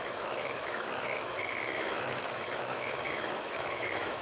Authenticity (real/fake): fake